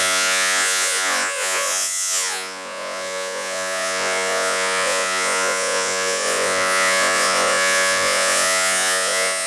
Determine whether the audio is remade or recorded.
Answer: remade